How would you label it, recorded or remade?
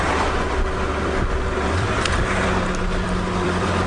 remade